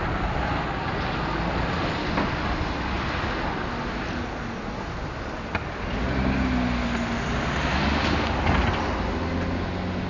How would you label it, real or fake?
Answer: real